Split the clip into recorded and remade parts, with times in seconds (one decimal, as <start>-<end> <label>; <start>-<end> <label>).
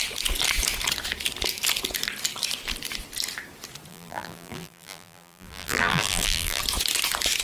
0.0-3.9 recorded; 3.9-6.6 remade; 6.6-7.4 recorded